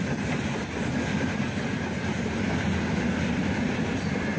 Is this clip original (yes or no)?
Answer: yes